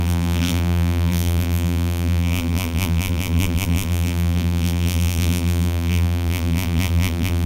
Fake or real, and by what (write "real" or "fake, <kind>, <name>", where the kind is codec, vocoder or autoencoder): fake, vocoder, BigVGAN v2